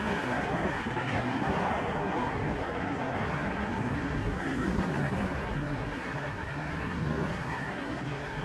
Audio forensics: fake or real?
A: fake